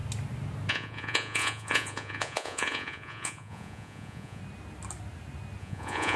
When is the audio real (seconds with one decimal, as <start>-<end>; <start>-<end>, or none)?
0.0-0.7; 4.4-5.6